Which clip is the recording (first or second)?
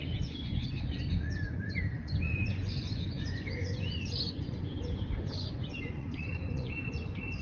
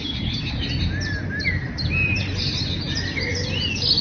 second